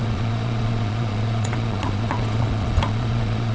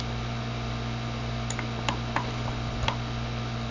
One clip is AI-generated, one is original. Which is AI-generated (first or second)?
first